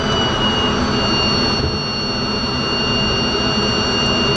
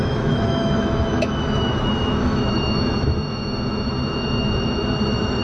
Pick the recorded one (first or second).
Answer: first